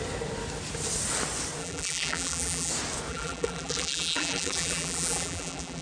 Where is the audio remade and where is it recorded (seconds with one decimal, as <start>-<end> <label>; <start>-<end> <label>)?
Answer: 0.0-1.6 recorded; 1.6-2.7 remade; 2.7-3.1 recorded; 3.1-5.8 remade